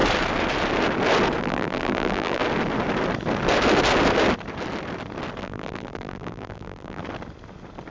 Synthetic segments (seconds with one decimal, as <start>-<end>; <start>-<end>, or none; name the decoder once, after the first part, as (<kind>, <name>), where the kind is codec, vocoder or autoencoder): 1.4-2.4 (vocoder, BigVGAN v2); 5.4-7.0